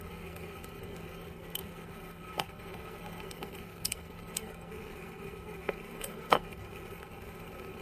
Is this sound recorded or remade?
remade